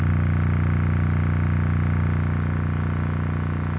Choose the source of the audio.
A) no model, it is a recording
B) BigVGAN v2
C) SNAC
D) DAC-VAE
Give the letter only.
A